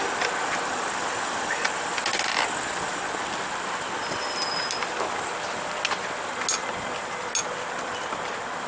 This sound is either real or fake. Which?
real